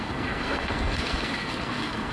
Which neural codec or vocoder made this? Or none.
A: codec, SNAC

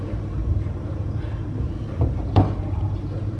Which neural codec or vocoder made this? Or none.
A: vocoder, BigVGAN v2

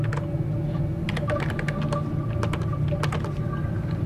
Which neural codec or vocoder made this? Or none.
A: none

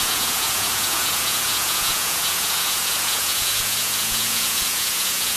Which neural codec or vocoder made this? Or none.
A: vocoder, Vocos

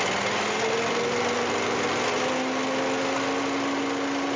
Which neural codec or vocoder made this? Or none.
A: none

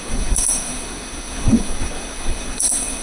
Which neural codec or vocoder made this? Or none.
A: codec, SNAC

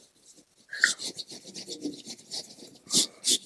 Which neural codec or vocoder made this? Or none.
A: none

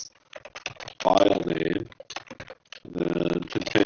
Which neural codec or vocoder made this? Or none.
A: none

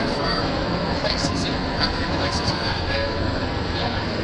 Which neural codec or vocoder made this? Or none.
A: codec, SNAC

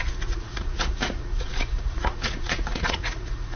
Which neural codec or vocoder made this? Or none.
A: vocoder, Vocos